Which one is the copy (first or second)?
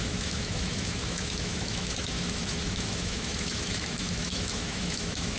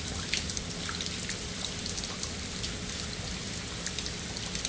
first